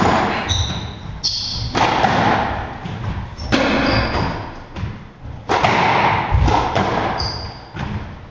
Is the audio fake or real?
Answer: real